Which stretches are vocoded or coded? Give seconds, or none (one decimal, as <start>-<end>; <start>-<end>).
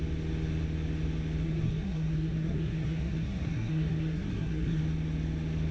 1.4-4.8